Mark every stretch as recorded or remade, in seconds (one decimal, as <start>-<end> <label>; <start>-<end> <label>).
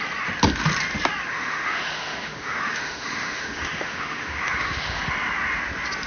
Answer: 0.0-1.3 recorded; 1.3-5.0 remade; 5.0-6.1 recorded